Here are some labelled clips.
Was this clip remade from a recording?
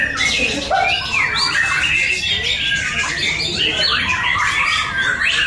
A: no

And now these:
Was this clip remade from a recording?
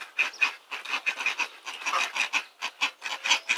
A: no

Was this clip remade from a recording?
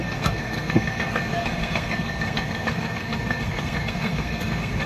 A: yes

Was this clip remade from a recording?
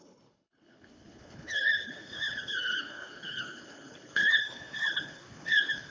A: yes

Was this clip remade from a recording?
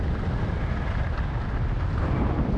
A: no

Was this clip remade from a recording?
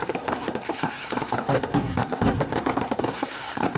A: yes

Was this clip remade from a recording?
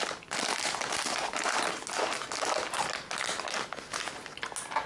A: no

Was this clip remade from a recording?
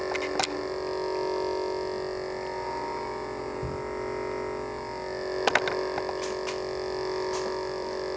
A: no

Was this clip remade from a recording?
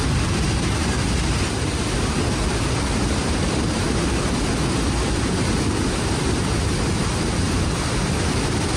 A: no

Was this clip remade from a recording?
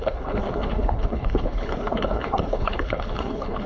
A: yes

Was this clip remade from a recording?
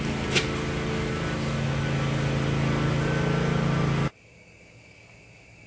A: no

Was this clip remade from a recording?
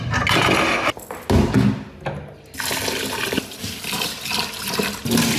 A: no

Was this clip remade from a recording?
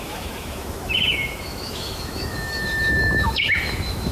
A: yes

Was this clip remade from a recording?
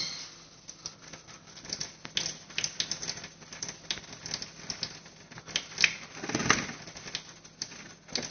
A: no